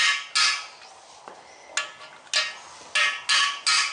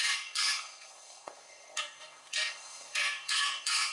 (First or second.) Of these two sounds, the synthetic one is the second